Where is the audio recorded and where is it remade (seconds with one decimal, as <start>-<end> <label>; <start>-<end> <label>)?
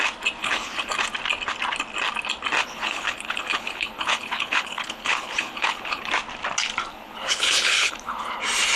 0.0-0.4 recorded; 0.4-0.9 remade; 0.9-2.6 recorded; 2.6-6.1 remade; 6.1-6.9 recorded; 6.9-8.4 remade; 8.4-8.8 recorded